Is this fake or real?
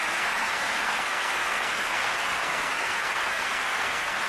fake